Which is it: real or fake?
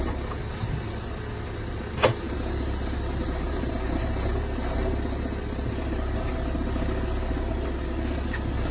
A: real